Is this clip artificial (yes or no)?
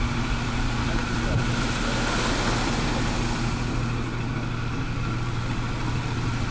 no